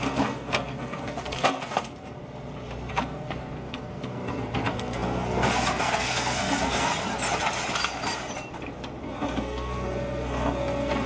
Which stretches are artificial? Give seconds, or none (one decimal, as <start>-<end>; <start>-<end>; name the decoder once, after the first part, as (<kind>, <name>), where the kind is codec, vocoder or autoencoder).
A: 0.0-2.2 (codec, SNAC); 2.9-6.9; 9.0-11.1